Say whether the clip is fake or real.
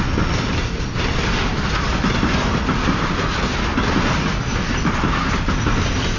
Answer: real